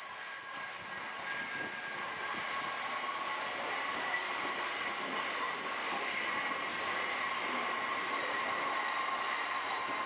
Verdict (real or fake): real